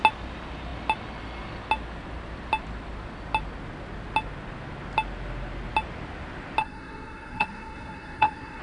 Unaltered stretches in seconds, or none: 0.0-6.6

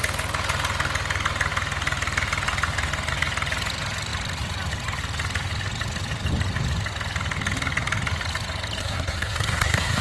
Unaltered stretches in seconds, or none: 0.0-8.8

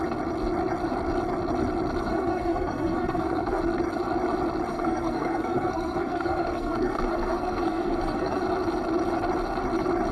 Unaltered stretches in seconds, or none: 0.0-2.1; 3.6-4.7; 8.4-10.1